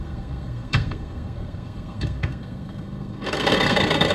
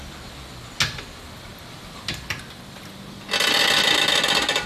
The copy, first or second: first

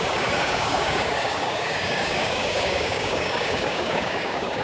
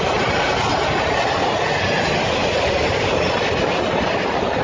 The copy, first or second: first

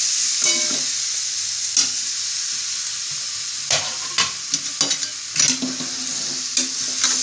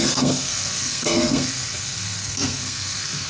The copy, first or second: second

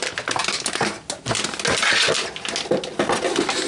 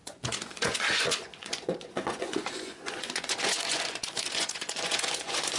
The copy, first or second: second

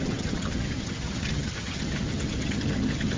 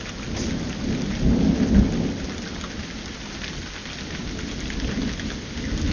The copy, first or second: first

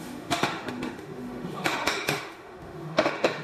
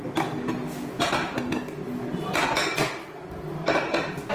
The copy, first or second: first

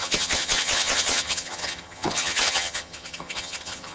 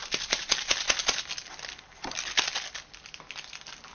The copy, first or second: first